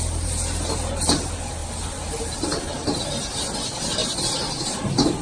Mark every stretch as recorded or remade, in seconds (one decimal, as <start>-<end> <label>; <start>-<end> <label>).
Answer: 0.0-5.2 recorded